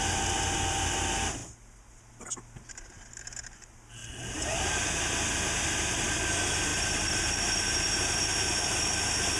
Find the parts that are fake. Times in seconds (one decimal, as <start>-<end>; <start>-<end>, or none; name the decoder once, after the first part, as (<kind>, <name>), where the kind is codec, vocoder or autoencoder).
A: 4.0-6.3 (vocoder, BigVGAN v2); 6.7-8.2